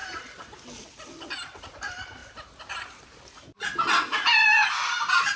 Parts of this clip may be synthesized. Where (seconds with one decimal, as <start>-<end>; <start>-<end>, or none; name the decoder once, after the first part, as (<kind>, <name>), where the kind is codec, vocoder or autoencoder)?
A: none